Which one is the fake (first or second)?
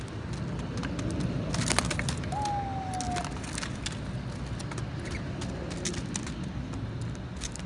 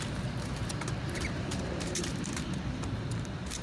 second